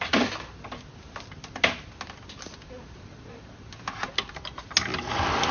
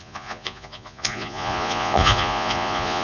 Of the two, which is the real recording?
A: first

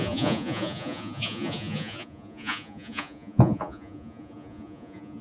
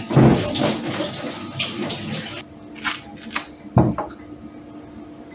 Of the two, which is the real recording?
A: second